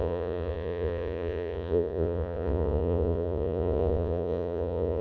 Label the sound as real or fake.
fake